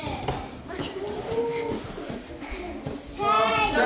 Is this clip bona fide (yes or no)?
yes